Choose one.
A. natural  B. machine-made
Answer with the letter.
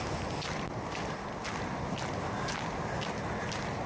A